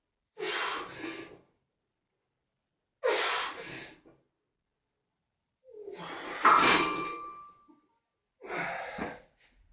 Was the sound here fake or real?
real